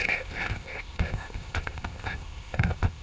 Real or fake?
fake